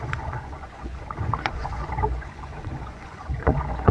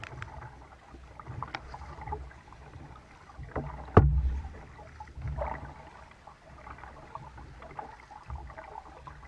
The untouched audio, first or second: second